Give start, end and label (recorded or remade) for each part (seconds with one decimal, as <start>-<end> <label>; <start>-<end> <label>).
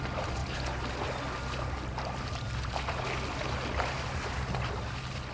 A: 0.0-0.4 remade; 0.4-1.7 recorded; 1.7-5.3 remade